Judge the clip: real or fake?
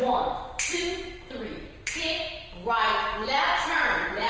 fake